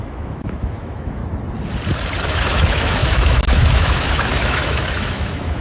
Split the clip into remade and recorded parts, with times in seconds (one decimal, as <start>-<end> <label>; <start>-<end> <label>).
0.0-1.2 remade; 1.2-2.3 recorded; 2.3-5.6 remade